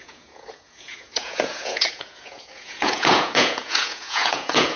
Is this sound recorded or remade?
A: remade